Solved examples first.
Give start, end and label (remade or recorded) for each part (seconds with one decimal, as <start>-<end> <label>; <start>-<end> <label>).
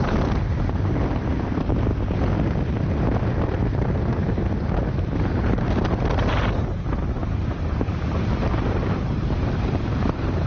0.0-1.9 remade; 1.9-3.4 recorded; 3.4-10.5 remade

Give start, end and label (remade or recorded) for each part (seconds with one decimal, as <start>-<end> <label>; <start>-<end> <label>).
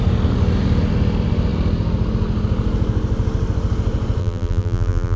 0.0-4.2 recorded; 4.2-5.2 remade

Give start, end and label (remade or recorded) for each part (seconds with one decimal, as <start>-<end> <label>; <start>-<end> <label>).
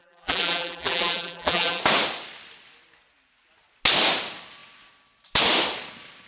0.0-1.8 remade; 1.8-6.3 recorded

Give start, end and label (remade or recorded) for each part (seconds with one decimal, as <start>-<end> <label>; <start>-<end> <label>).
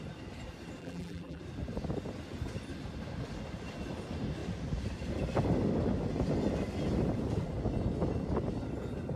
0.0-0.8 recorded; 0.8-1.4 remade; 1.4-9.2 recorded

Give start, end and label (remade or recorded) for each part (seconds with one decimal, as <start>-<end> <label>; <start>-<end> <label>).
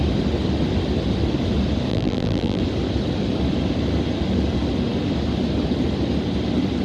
0.0-1.9 recorded; 1.9-2.6 remade; 2.6-6.8 recorded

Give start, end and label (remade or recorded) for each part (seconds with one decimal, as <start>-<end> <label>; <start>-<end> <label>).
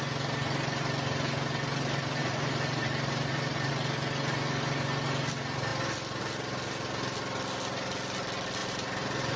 0.0-2.2 recorded; 2.2-3.7 remade; 3.7-8.6 recorded; 8.6-9.4 remade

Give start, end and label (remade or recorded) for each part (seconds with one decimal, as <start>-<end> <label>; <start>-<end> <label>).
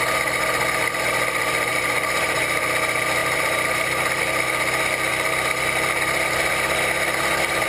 0.0-1.7 recorded; 1.7-2.6 remade; 2.6-3.2 recorded; 3.2-4.2 remade; 4.2-7.7 recorded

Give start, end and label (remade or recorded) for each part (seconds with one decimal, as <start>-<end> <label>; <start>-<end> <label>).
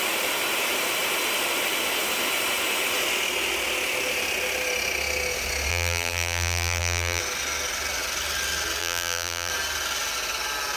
0.0-5.7 recorded; 5.7-7.2 remade; 7.2-8.8 recorded; 8.8-9.5 remade; 9.5-10.8 recorded